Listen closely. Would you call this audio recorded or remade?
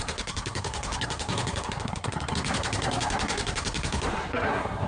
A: remade